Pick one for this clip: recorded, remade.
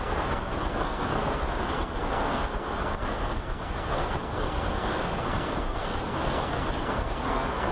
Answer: remade